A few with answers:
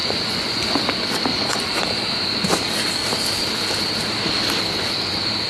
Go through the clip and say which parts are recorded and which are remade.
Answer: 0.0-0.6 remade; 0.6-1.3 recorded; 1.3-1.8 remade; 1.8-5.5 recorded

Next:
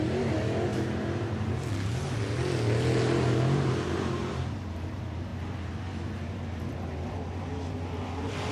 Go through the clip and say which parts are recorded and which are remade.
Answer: 0.0-0.7 recorded; 0.7-1.5 remade; 1.5-8.5 recorded

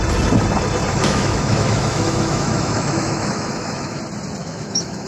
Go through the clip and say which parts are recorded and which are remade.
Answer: 0.0-0.9 recorded; 0.9-4.0 remade; 4.0-4.4 recorded; 4.4-5.1 remade